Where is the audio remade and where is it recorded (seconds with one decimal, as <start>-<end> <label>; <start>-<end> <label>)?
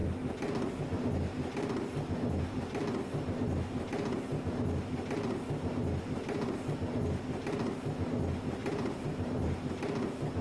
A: 0.0-8.6 recorded; 8.6-9.6 remade; 9.6-10.4 recorded